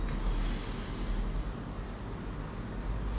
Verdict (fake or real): real